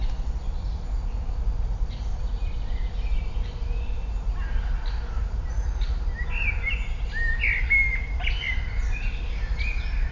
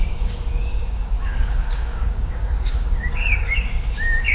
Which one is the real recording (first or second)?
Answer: first